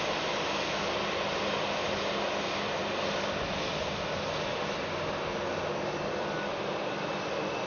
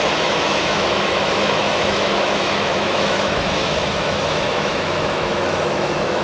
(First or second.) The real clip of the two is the first